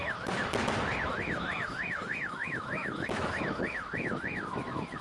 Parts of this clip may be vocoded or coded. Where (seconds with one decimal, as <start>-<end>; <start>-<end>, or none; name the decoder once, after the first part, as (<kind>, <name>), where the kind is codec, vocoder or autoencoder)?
0.0-0.4 (autoencoder, DAC-VAE); 1.1-5.0